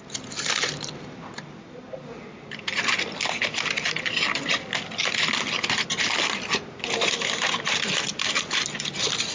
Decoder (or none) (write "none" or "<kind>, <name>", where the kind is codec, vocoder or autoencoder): none